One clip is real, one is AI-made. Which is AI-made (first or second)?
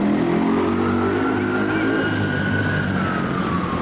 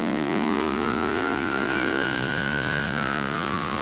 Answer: second